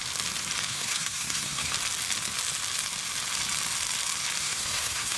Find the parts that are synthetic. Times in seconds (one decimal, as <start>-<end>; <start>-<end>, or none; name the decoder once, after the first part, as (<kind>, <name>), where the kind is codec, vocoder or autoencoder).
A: 0.7-1.7 (codec, SNAC); 4.4-5.2